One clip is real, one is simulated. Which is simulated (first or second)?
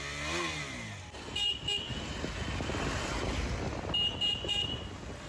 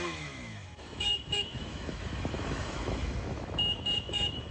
second